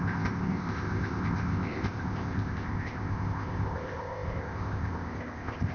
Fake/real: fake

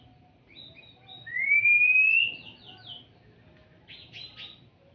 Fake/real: real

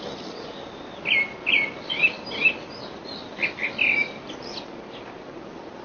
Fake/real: real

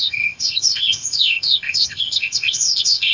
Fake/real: fake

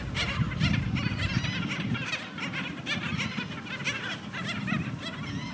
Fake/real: real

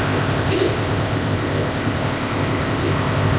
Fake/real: fake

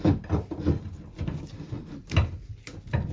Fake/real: real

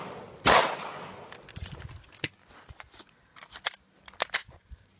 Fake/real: real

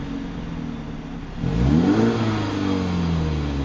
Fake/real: real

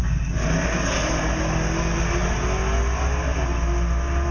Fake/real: real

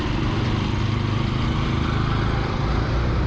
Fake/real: real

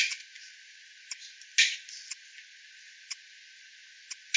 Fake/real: real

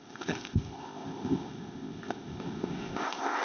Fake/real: fake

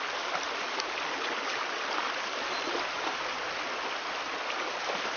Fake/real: real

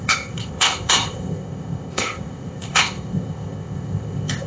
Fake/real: fake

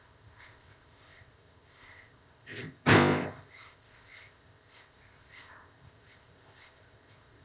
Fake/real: fake